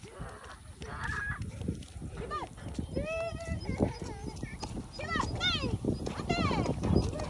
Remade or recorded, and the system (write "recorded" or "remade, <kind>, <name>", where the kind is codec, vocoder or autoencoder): recorded